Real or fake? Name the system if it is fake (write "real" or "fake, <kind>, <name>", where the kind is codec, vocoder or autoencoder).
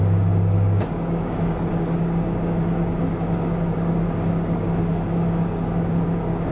fake, codec, DAC